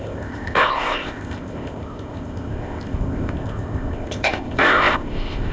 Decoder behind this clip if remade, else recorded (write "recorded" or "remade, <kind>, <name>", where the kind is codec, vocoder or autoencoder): remade, codec, ZipCodec